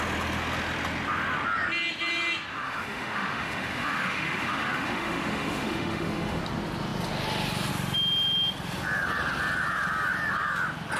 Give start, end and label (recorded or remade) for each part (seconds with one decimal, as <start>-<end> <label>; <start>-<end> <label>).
0.0-2.5 recorded; 2.5-6.4 remade; 6.4-11.0 recorded